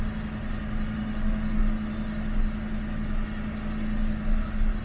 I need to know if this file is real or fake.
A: real